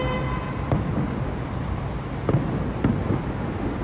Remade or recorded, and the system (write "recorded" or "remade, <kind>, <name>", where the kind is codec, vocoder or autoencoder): recorded